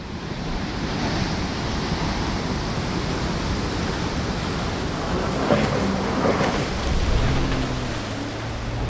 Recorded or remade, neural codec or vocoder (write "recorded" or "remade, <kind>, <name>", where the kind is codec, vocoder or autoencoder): recorded